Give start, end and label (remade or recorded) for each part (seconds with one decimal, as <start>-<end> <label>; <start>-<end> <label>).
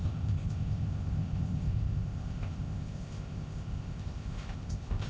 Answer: 0.0-5.1 remade